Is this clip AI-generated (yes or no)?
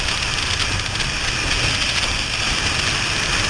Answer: no